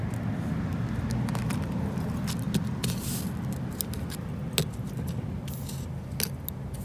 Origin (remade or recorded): recorded